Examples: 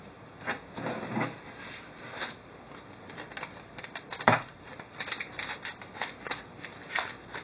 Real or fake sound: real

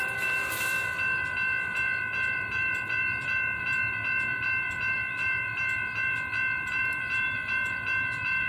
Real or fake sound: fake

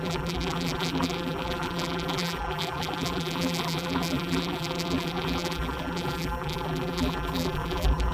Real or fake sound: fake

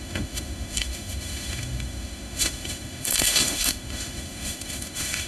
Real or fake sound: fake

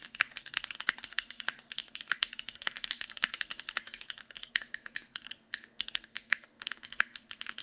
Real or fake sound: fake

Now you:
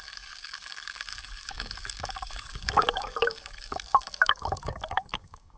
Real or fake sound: fake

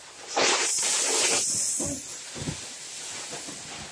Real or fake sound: real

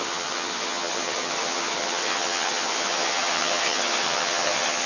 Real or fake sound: fake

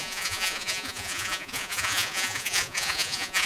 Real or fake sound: fake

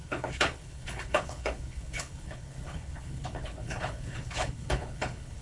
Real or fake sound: fake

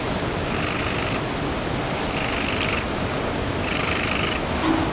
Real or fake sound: real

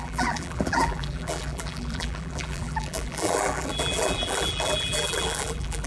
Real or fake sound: fake